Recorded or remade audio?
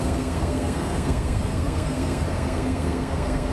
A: remade